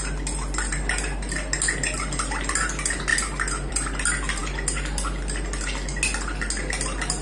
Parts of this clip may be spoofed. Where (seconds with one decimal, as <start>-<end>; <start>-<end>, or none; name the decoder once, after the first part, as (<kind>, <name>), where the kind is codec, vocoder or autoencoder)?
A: none